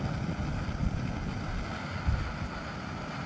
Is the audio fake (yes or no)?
no